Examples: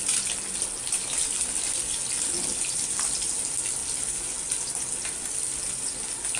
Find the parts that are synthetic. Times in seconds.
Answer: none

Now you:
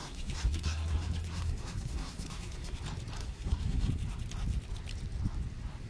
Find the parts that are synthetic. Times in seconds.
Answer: 0.0-2.8; 3.2-3.9

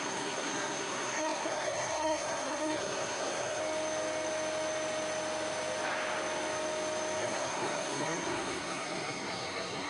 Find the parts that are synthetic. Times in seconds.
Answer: 0.0-3.6; 7.2-9.9

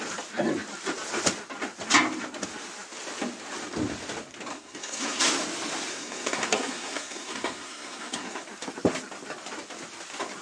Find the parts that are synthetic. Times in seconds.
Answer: 4.5-5.2; 5.9-8.4

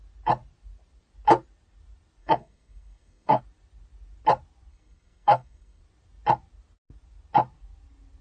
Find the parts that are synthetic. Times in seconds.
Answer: 2.2-3.4; 4.7-5.8

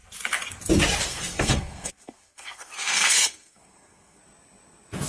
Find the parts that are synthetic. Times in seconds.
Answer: 1.1-4.2

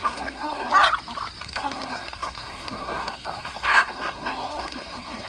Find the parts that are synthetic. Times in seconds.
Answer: 0.0-0.7; 1.4-5.3